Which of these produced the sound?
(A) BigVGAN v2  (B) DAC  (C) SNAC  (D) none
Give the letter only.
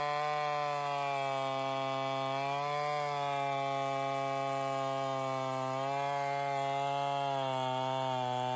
D